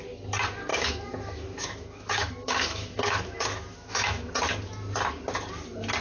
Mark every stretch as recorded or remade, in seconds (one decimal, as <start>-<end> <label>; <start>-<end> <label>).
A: 0.0-0.7 recorded; 0.7-4.3 remade; 4.3-6.0 recorded